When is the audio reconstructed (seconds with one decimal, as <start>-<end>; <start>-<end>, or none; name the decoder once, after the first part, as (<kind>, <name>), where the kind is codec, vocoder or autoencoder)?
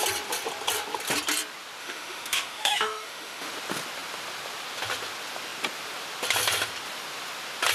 1.8-3.5 (autoencoder, DAC-VAE)